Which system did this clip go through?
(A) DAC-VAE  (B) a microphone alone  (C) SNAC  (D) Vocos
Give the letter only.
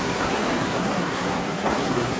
C